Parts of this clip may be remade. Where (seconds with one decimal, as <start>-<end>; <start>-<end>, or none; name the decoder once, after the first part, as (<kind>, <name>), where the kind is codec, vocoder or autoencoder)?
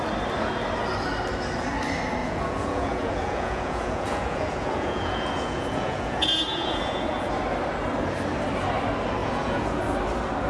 2.2-7.3 (vocoder, Vocos); 9.2-9.8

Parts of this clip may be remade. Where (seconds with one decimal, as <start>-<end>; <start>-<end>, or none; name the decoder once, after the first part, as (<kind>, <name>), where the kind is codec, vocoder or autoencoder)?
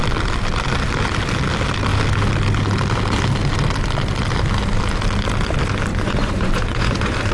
5.9-7.3 (vocoder, Vocos)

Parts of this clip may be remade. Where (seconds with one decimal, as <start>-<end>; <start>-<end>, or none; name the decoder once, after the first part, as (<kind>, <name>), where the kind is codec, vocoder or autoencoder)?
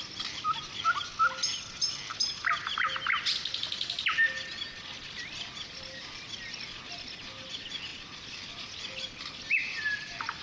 none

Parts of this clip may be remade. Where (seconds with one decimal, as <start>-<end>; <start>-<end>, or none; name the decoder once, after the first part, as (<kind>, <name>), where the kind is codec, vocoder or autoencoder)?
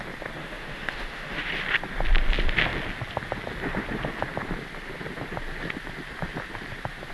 0.4-1.5 (autoencoder, DAC-VAE)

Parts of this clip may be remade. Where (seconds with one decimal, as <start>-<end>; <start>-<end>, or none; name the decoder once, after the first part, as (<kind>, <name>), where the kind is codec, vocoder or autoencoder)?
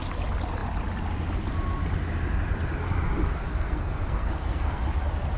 3.4-4.8 (codec, SNAC)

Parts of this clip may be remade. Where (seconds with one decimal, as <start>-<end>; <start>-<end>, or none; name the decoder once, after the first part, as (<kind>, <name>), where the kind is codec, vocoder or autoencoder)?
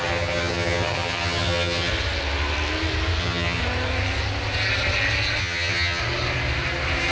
0.0-1.9 (vocoder, HiFi-GAN); 3.2-3.6; 5.4-6.0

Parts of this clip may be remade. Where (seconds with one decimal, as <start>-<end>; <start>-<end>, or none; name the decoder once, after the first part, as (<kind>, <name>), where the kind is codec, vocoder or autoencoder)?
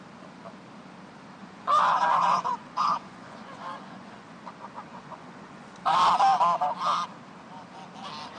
1.4-4.4 (vocoder, Vocos); 4.9-6.0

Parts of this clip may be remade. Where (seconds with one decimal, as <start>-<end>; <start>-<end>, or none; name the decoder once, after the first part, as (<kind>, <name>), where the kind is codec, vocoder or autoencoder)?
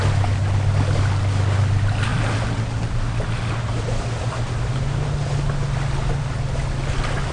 none